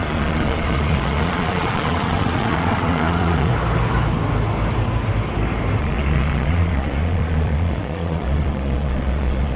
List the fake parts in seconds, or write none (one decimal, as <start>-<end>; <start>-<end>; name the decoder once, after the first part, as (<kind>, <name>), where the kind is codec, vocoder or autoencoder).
0.0-3.5 (vocoder, Vocos); 5.8-9.6